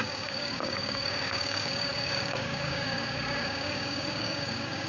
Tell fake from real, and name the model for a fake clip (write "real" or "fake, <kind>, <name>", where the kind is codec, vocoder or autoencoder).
fake, codec, DAC